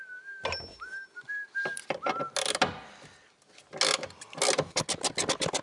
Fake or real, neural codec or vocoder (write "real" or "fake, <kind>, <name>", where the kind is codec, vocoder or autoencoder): real